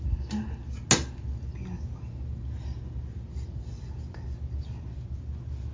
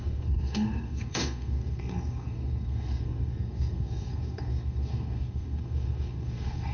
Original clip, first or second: first